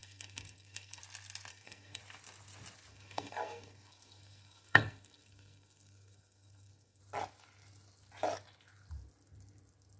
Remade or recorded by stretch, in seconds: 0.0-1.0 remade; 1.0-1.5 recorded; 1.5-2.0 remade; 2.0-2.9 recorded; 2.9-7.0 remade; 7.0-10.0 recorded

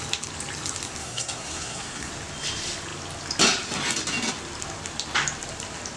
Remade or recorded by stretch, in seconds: 0.0-1.0 recorded; 1.0-2.1 remade; 2.1-6.0 recorded

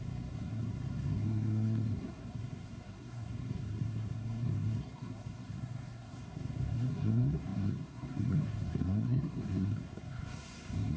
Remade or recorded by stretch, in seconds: 0.0-11.0 remade

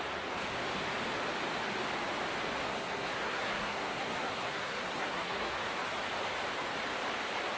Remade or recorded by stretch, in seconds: 0.0-2.7 recorded; 2.7-5.6 remade; 5.6-7.6 recorded

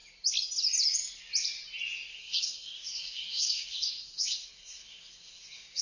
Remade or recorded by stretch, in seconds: 0.0-2.1 recorded; 2.1-5.8 remade